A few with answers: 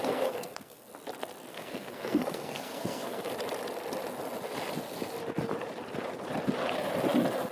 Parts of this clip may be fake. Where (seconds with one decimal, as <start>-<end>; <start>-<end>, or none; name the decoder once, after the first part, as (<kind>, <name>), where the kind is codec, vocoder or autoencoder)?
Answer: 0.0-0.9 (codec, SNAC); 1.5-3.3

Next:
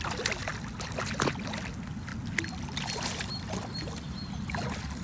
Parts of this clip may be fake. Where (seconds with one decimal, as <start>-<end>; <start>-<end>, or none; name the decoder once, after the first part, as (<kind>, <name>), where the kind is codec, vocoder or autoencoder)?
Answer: none

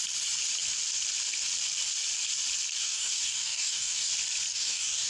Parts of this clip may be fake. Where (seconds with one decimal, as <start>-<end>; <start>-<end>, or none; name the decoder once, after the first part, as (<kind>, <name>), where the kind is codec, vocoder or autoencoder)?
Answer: 2.8-4.1 (codec, DAC); 4.5-5.1

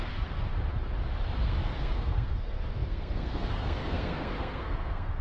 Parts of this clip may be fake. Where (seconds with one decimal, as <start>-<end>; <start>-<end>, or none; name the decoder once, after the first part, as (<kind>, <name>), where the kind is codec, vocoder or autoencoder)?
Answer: 0.0-0.4 (codec, SNAC); 1.4-5.2

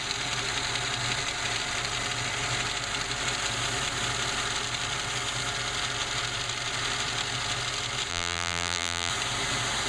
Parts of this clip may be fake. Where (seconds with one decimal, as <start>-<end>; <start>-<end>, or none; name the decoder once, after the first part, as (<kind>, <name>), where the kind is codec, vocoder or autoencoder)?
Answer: 8.1-9.1 (vocoder, BigVGAN v2)